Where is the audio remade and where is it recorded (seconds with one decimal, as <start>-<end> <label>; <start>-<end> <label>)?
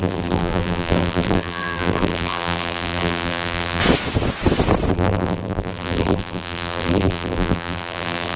0.0-3.8 remade; 3.8-4.9 recorded; 4.9-8.4 remade